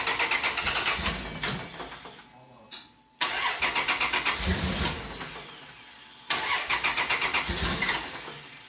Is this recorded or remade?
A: recorded